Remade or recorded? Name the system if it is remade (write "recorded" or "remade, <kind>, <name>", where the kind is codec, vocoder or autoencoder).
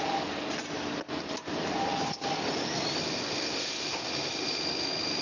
recorded